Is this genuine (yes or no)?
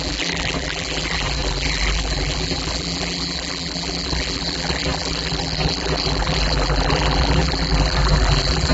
no